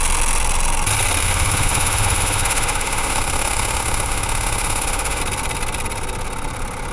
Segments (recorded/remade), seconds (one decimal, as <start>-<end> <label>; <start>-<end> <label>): 0.0-1.2 recorded; 1.2-5.2 remade; 5.2-6.9 recorded